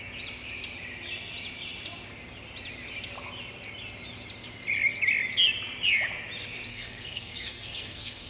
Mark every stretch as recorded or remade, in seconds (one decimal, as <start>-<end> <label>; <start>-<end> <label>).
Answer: 0.0-6.7 recorded; 6.7-8.3 remade